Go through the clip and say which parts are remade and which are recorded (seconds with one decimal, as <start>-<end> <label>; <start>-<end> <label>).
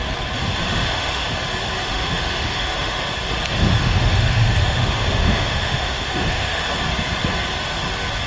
0.0-0.4 recorded; 0.4-1.3 remade; 1.3-1.8 recorded; 1.8-3.1 remade; 3.1-3.8 recorded; 3.8-6.6 remade; 6.6-8.3 recorded